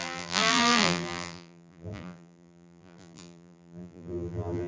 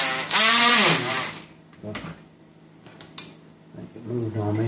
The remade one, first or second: first